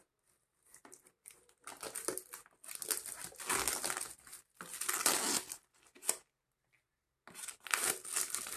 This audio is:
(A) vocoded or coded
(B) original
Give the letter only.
B